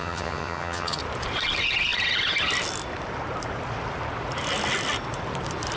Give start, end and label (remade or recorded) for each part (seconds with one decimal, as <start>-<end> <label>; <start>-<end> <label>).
0.0-1.0 remade; 1.0-5.8 recorded